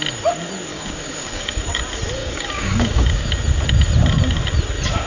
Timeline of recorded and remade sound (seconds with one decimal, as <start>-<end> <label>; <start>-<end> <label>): 0.0-0.7 recorded; 0.7-1.8 remade; 1.8-2.2 recorded; 2.2-3.3 remade; 3.3-5.1 recorded